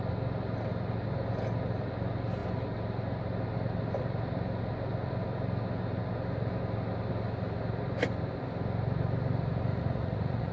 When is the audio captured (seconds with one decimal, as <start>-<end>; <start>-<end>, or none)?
0.0-9.7